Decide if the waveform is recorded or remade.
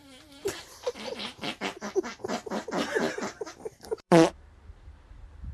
remade